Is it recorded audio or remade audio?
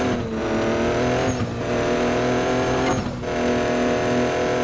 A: recorded